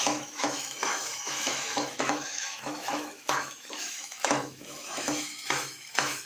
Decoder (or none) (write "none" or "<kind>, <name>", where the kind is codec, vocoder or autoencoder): autoencoder, DAC-VAE